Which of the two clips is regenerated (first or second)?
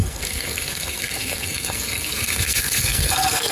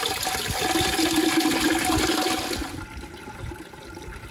first